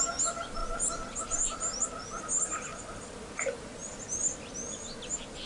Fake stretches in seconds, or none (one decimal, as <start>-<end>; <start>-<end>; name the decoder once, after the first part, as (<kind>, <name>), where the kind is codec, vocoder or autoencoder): none